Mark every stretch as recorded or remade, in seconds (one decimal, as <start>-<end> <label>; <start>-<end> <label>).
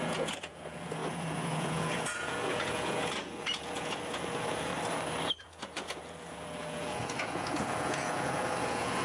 0.0-4.7 remade; 4.7-5.4 recorded; 5.4-9.0 remade